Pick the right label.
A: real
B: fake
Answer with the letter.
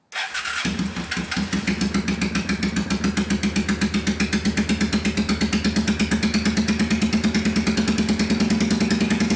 A